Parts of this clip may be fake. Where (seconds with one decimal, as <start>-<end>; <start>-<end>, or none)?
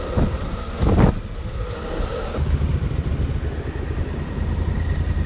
2.1-2.7